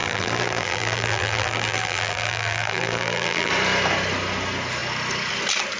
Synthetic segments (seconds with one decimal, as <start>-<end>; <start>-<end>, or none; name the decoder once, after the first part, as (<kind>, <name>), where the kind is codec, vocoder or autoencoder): 0.0-3.5 (vocoder, BigVGAN v2)